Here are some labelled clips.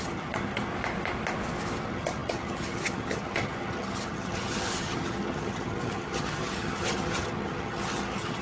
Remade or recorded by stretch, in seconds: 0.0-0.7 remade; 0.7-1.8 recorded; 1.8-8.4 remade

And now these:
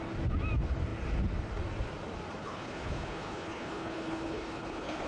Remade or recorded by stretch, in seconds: 0.0-2.4 recorded; 2.4-5.1 remade

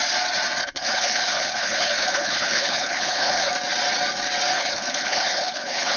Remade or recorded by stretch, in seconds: 0.0-0.6 recorded; 0.6-3.5 remade; 3.5-4.5 recorded; 4.5-6.0 remade

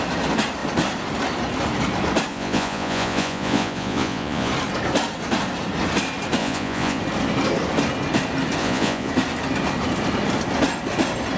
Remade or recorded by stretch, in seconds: 0.0-2.3 recorded; 2.3-4.5 remade; 4.5-6.4 recorded; 6.4-7.0 remade; 7.0-8.6 recorded; 8.6-9.1 remade; 9.1-11.4 recorded

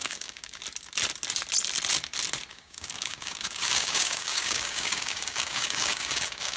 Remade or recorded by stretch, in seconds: 0.0-0.6 remade; 0.6-2.5 recorded; 2.5-6.6 remade

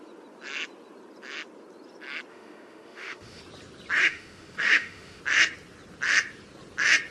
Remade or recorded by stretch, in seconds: 0.0-2.3 recorded; 2.3-3.4 remade; 3.4-4.0 recorded; 4.0-5.2 remade; 5.2-7.1 recorded

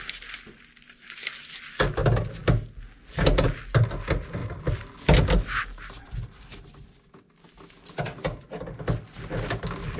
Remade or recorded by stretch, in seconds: 0.0-10.0 recorded